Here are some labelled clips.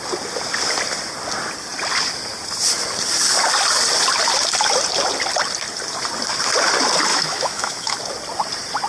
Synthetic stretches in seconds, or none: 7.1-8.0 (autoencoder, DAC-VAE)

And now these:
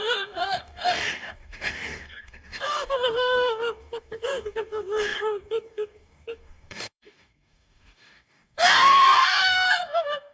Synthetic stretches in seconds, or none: 0.0-10.3 (codec, DAC)

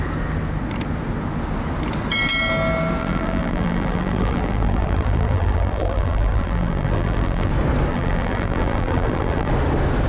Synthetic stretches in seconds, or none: 3.0-7.5 (vocoder, BigVGAN v2); 7.9-9.5